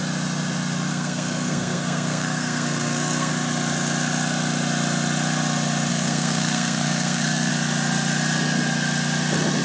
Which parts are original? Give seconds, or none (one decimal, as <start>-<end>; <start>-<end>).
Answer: 0.0-0.9; 3.3-5.9; 7.5-9.6